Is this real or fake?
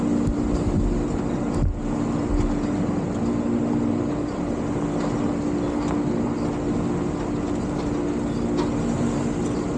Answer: real